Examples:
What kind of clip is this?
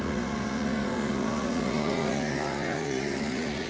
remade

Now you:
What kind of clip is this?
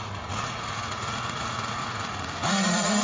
remade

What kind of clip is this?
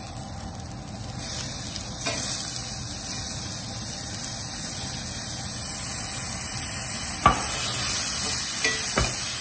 recorded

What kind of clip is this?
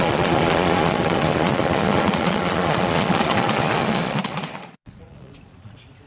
remade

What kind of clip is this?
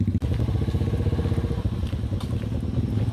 recorded